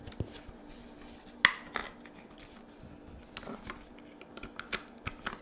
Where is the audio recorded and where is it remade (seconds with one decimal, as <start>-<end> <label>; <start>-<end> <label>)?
0.0-5.4 recorded